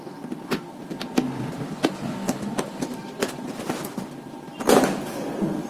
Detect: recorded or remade recorded